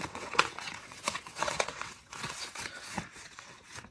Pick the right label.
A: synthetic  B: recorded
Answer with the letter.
A